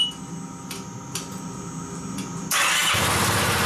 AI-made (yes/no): no